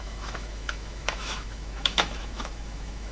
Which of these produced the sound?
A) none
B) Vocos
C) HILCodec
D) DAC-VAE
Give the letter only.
D